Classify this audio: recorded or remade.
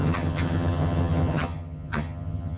remade